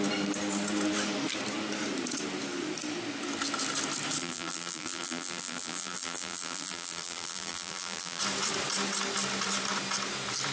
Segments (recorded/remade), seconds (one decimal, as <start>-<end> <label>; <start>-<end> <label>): 0.0-4.2 recorded; 4.2-8.2 remade; 8.2-10.5 recorded